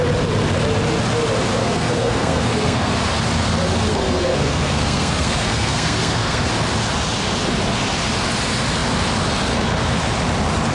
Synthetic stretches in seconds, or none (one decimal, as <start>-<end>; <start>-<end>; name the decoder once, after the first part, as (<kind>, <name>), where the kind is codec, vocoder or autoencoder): 1.6-2.9 (codec, SNAC); 3.9-6.5